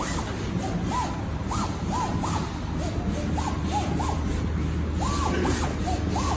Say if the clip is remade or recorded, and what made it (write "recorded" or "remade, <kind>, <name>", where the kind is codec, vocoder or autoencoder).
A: recorded